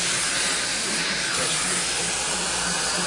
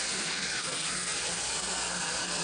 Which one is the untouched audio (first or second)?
first